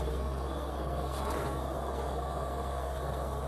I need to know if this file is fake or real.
fake